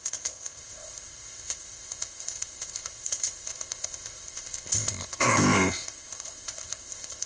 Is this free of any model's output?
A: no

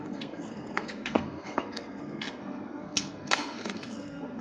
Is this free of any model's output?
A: no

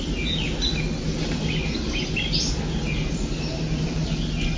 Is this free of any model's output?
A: yes